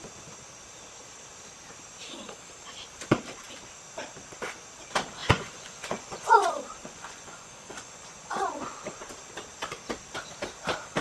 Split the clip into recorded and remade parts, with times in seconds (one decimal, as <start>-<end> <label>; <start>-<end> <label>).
0.0-5.2 recorded; 5.2-6.3 remade; 6.3-6.8 recorded; 6.8-9.0 remade; 9.0-11.0 recorded